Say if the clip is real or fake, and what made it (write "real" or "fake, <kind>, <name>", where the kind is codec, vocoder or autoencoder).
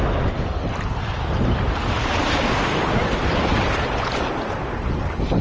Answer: real